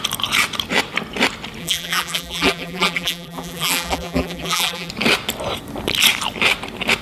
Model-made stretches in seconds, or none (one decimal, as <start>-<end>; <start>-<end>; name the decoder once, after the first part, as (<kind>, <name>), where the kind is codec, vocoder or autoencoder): 1.6-4.9 (vocoder, BigVGAN v2)